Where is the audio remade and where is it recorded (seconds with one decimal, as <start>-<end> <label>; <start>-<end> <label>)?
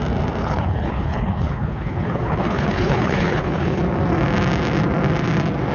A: 0.0-0.4 recorded; 0.4-3.8 remade; 3.8-5.7 recorded